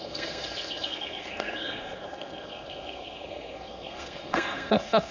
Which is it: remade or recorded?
remade